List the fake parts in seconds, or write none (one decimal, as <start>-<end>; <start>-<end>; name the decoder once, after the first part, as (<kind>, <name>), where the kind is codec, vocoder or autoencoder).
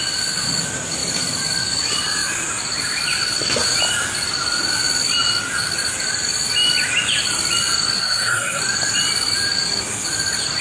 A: 8.0-8.6 (codec, SNAC)